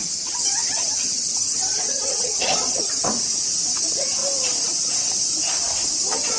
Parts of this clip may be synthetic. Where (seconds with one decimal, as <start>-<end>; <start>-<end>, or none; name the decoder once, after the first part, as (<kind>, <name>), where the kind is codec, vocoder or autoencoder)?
0.0-3.1 (vocoder, HiFi-GAN)